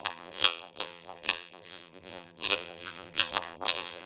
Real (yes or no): no